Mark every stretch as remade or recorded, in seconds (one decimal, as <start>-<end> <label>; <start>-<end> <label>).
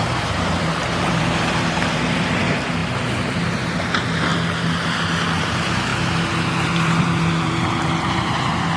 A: 0.0-4.3 remade; 4.3-5.4 recorded; 5.4-5.9 remade; 5.9-7.0 recorded; 7.0-8.8 remade